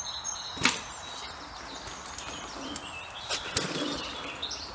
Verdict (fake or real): real